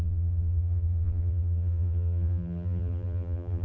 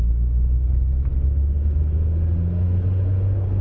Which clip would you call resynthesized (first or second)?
first